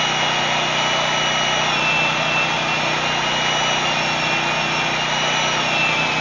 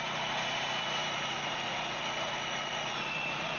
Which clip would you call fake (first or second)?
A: second